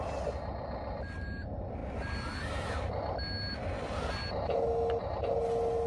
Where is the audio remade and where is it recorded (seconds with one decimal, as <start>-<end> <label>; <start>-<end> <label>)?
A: 0.0-5.9 recorded